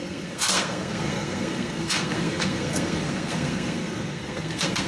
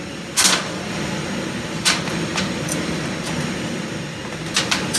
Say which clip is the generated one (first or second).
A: first